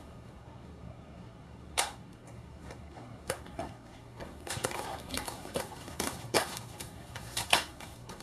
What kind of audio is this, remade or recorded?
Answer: remade